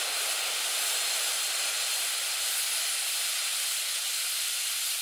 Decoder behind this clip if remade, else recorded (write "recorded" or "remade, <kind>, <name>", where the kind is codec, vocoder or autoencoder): recorded